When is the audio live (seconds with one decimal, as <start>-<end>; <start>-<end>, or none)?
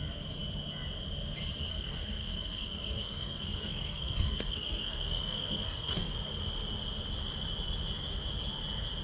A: 0.0-1.7; 6.1-9.0